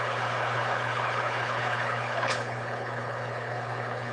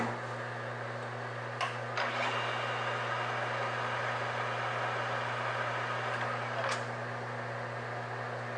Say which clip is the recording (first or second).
second